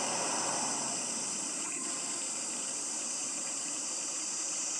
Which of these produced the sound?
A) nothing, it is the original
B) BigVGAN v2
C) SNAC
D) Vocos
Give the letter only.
B